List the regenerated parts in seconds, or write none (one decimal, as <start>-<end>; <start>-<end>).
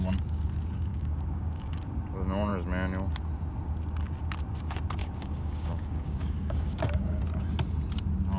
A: 0.9-1.9; 5.0-7.2